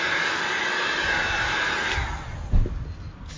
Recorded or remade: recorded